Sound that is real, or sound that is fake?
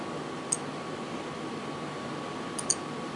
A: real